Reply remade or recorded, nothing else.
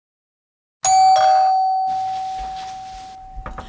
recorded